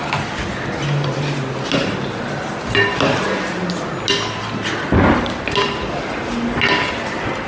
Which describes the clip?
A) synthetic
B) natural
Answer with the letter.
B